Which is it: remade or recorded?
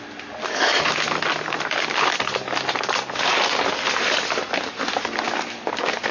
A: recorded